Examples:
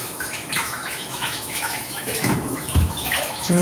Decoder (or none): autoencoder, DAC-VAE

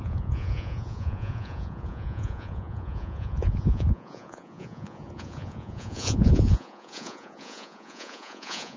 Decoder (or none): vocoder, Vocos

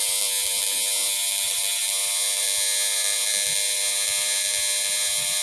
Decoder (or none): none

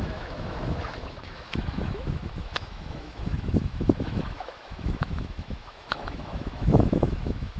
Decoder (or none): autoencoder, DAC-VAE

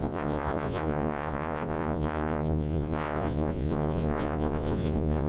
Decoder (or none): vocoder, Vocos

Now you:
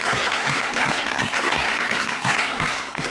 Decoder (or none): codec, SNAC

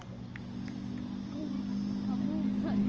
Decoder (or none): none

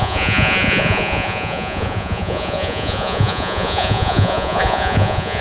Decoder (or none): vocoder, Vocos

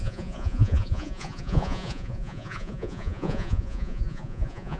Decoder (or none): vocoder, Vocos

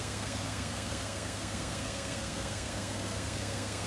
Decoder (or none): codec, SNAC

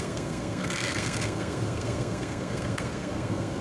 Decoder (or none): codec, SNAC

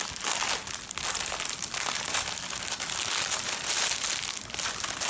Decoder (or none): none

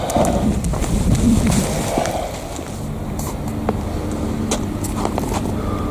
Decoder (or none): none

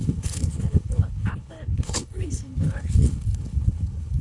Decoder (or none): codec, HILCodec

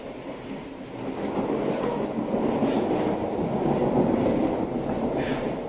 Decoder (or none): none